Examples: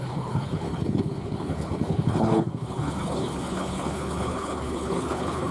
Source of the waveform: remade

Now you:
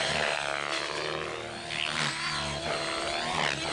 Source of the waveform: recorded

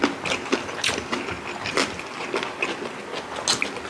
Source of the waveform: recorded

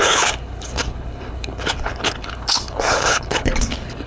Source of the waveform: remade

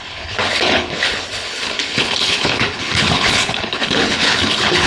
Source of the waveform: remade